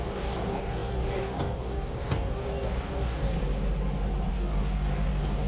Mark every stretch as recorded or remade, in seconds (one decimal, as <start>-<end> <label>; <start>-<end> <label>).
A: 0.0-3.3 remade; 3.3-4.3 recorded; 4.3-5.5 remade